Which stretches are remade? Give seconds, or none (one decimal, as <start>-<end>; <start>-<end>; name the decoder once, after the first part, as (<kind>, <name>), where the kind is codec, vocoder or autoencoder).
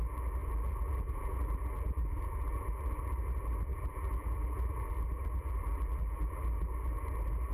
0.4-3.0 (vocoder, BigVGAN v2); 3.7-6.7